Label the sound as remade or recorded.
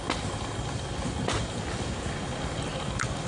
recorded